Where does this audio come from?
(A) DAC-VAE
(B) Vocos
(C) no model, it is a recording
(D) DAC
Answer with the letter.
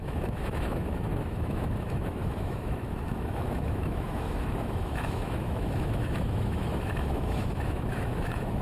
A